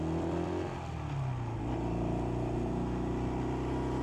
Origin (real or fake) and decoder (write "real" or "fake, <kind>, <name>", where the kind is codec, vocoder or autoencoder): real